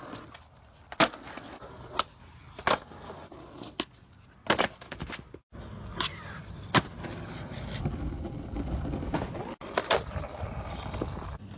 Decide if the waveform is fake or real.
real